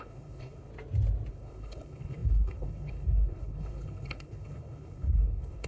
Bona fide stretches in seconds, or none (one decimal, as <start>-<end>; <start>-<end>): 0.7-1.3